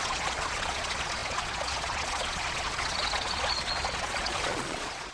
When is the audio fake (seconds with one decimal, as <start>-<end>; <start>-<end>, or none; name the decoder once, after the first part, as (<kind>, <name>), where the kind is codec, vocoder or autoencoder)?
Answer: 0.0-5.1 (vocoder, Vocos)